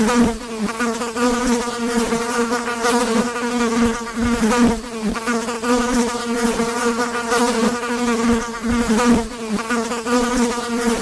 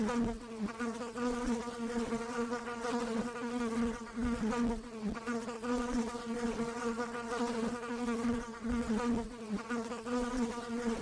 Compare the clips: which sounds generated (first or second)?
second